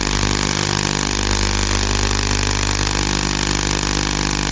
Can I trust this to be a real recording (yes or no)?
yes